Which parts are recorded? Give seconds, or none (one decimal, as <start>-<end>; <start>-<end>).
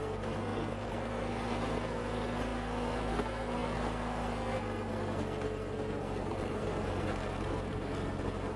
none